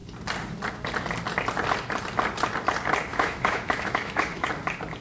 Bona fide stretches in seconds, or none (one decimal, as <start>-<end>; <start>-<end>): 0.0-3.1; 4.5-5.0